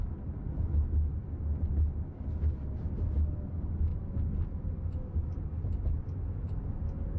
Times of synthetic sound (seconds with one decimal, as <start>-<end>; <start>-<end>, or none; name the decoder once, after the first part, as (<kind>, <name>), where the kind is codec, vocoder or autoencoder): none